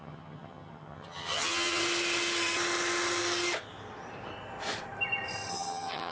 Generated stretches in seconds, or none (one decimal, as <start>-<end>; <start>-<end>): 0.0-1.8; 5.5-6.1